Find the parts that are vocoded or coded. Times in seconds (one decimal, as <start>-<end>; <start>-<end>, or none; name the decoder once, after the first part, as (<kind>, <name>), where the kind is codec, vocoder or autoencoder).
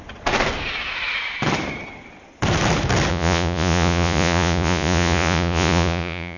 3.1-6.4 (vocoder, Vocos)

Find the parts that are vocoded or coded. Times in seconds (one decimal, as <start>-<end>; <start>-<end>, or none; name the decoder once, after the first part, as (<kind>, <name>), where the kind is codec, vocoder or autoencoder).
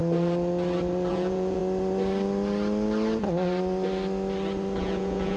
1.1-1.6 (vocoder, Vocos); 4.8-5.4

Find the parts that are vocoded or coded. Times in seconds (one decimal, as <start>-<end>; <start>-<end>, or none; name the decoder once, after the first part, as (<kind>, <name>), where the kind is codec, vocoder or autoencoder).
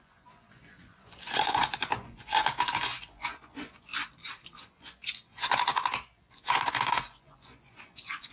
0.0-3.9 (vocoder, Vocos); 4.7-8.3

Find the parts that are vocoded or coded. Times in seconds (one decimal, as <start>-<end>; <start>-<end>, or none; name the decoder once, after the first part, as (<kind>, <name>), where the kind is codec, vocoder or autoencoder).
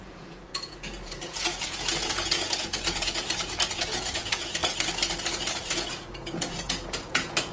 0.0-4.6 (vocoder, Vocos); 5.4-7.5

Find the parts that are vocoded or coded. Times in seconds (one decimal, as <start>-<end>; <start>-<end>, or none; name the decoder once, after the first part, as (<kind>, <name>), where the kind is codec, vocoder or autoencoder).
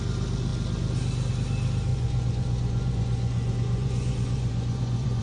1.9-5.2 (vocoder, Vocos)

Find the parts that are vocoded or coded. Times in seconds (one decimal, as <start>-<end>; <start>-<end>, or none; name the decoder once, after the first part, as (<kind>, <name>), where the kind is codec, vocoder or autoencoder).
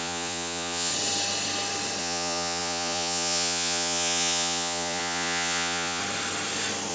0.0-0.9 (vocoder, Vocos); 2.0-6.0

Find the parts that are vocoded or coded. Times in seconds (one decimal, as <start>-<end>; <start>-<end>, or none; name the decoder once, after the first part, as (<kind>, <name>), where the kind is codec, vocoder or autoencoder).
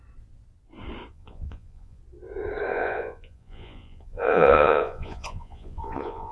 1.1-2.0 (vocoder, Vocos); 2.7-6.3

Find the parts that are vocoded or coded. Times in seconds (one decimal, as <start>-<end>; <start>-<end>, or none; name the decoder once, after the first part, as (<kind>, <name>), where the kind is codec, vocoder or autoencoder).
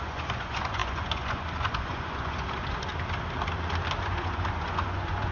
0.0-2.9 (vocoder, Vocos); 4.0-5.3